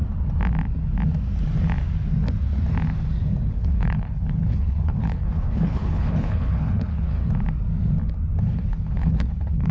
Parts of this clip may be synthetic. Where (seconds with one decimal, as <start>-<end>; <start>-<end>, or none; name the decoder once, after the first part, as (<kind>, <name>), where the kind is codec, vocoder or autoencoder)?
3.5-7.2 (codec, HILCodec); 8.4-9.7